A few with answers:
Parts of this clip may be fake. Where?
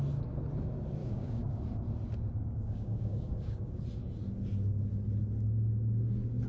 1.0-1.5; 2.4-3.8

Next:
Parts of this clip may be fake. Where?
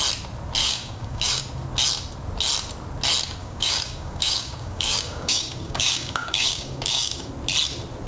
0.6-1.4; 3.4-7.3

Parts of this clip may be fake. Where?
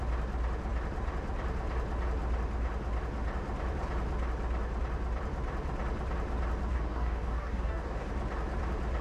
6.7-8.1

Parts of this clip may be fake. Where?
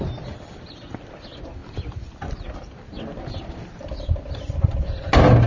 none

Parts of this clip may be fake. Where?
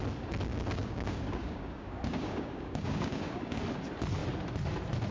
0.5-3.6